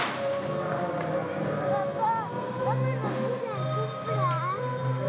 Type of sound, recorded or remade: recorded